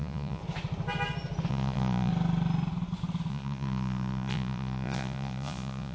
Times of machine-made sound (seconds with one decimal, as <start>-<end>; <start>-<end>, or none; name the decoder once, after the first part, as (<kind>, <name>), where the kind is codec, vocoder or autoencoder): 0.0-0.4 (vocoder, Vocos); 1.5-2.1; 3.3-5.9